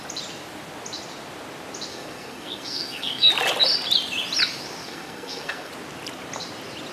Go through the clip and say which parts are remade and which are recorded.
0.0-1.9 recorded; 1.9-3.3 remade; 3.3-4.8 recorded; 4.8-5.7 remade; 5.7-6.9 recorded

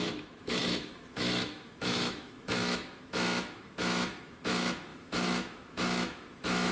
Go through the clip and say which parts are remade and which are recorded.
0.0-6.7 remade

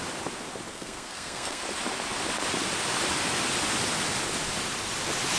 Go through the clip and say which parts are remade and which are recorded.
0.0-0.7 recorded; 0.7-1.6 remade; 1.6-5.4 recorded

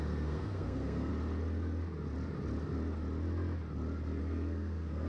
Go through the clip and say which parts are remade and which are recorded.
0.0-1.1 remade; 1.1-4.2 recorded; 4.2-5.1 remade

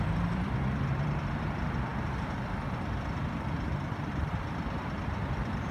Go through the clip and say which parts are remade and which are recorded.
0.0-5.7 remade

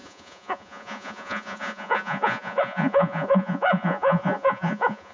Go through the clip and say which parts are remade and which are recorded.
0.0-5.1 remade

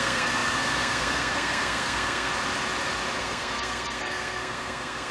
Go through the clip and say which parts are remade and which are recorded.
0.0-2.3 remade; 2.3-3.2 recorded; 3.2-5.1 remade

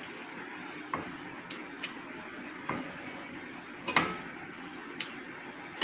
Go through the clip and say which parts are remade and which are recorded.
0.0-2.3 recorded; 2.3-3.4 remade; 3.4-5.8 recorded